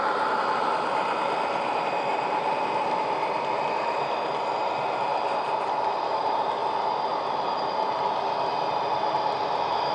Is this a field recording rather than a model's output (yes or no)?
yes